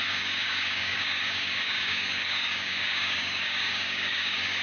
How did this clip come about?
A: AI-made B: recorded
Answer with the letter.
A